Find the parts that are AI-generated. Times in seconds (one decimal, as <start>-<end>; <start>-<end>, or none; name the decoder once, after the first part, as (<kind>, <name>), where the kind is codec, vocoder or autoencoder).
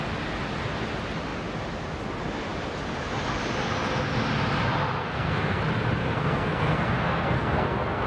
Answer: 5.0-5.6 (codec, SNAC); 6.0-8.1